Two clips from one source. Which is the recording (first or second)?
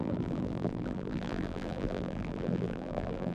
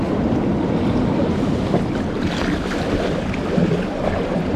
second